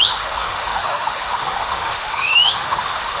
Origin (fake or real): fake